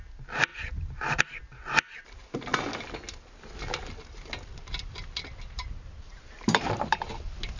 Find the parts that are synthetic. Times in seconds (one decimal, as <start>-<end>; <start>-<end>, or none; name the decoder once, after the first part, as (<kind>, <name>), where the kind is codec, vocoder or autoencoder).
0.5-1.4 (vocoder, BigVGAN v2); 6.1-6.8